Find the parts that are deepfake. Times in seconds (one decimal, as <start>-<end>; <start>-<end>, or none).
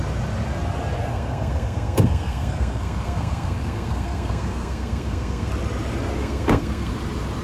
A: 1.1-5.5; 6.2-6.9